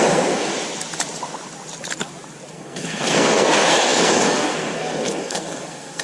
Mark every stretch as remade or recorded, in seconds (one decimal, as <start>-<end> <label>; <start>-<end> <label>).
0.0-0.5 remade; 0.5-2.5 recorded; 2.5-6.0 remade